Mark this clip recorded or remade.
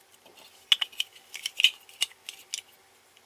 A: recorded